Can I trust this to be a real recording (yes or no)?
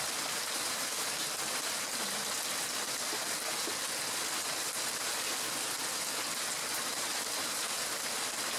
yes